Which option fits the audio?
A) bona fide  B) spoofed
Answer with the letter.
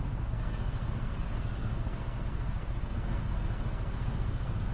B